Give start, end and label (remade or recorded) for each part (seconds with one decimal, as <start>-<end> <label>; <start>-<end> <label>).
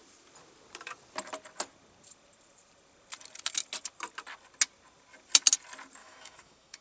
0.0-6.0 recorded; 6.0-6.8 remade